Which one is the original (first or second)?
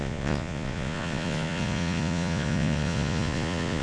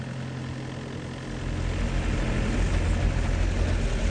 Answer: second